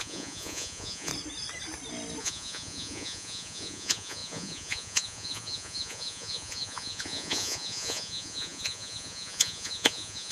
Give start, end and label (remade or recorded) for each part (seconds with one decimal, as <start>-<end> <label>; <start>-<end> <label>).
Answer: 0.0-1.1 remade; 1.1-2.2 recorded; 2.2-10.3 remade